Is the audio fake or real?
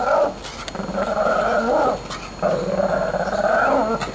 real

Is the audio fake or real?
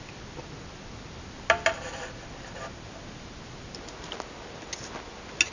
real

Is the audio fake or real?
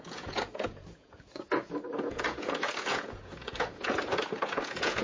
fake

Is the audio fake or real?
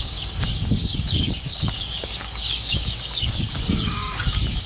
fake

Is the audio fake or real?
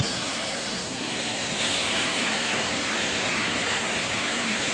fake